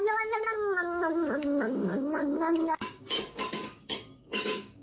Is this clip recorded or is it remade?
remade